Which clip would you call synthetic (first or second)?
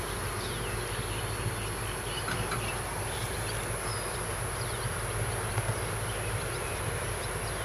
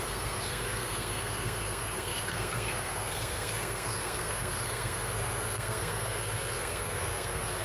second